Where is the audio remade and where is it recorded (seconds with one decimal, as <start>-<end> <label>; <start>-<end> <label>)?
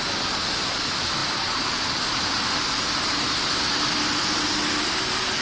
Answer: 0.0-1.2 recorded; 1.2-3.6 remade; 3.6-5.4 recorded